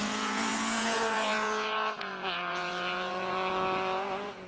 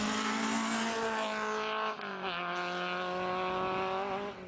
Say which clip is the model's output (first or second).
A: first